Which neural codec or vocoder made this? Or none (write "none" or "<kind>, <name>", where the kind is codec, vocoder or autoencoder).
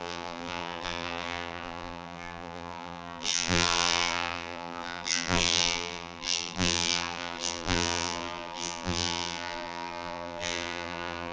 vocoder, BigVGAN v2